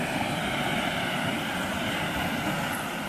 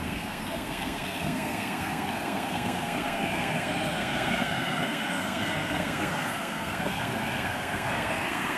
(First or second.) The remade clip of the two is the second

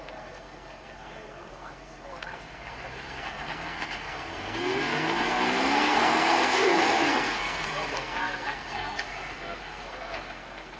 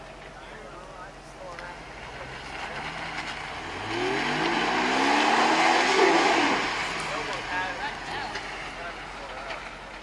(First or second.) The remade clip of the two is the first